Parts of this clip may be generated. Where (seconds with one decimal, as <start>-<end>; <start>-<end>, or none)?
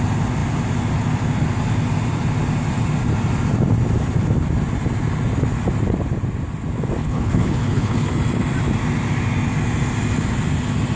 7.0-8.1